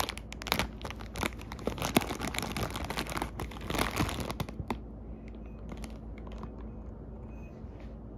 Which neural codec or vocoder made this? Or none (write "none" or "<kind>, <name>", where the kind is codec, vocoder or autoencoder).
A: none